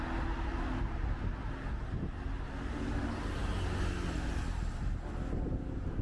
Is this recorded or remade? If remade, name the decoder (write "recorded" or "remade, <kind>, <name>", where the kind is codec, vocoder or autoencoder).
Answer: recorded